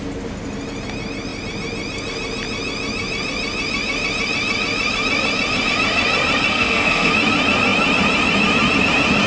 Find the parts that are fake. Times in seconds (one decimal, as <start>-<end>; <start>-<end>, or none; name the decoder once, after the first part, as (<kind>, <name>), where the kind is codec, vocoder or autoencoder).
6.5-7.1 (codec, SNAC)